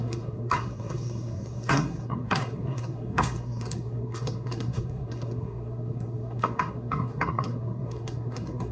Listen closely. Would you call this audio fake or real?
fake